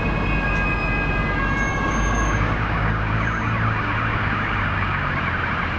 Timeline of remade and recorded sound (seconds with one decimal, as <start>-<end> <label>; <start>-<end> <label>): 0.0-1.7 recorded; 1.7-5.2 remade; 5.2-5.8 recorded